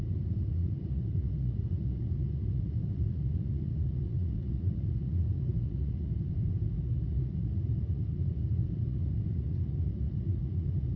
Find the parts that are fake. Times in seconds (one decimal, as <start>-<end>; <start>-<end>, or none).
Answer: 0.0-6.1; 6.8-11.0